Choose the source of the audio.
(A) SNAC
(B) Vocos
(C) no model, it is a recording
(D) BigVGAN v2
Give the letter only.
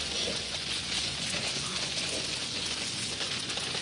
B